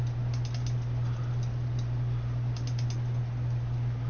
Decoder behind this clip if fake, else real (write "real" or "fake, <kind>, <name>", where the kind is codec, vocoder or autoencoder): real